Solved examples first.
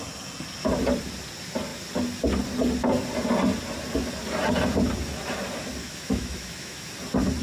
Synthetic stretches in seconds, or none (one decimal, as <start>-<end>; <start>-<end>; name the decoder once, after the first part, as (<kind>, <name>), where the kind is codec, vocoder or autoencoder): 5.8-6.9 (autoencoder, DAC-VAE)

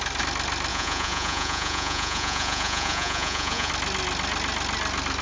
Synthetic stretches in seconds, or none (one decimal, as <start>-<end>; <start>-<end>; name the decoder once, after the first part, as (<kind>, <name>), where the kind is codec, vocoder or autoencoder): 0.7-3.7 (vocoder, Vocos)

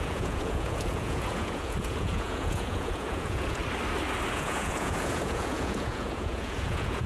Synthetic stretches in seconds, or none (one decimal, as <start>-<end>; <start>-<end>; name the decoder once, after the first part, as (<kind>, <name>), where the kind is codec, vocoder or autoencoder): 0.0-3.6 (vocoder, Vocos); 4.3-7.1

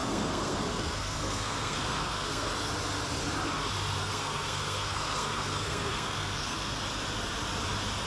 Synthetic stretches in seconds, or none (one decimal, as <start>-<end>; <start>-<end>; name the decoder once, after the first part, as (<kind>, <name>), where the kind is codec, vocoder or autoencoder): 0.0-2.5 (codec, SNAC); 4.0-6.8